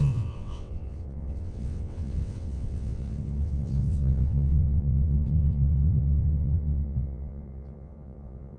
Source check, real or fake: fake